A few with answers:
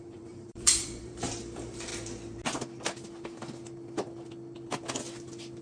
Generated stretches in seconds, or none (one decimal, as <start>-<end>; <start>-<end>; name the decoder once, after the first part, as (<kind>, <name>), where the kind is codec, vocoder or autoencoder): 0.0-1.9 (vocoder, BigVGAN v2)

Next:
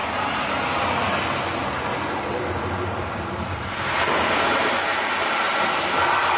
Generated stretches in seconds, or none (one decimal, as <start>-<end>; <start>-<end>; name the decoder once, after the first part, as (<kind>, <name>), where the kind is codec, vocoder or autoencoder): 1.6-5.4 (vocoder, BigVGAN v2)

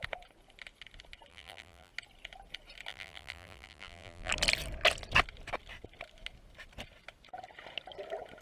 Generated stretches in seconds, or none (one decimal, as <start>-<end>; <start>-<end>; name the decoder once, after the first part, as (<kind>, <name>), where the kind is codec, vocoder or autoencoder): 1.3-1.9 (vocoder, BigVGAN v2); 2.9-4.3